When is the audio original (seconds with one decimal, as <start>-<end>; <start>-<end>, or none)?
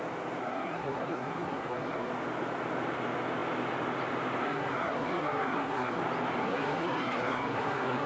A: 0.0-0.4; 2.1-4.4; 6.0-6.4